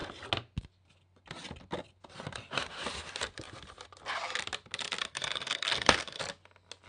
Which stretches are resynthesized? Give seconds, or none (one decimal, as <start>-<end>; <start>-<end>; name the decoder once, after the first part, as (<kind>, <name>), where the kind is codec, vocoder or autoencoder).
5.0-6.2 (codec, SNAC)

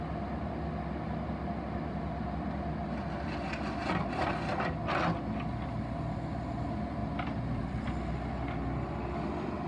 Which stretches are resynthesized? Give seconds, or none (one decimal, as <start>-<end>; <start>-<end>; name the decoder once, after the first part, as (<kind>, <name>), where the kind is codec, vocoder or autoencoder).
7.0-8.1 (vocoder, BigVGAN v2)